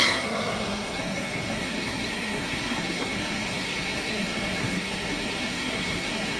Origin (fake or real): fake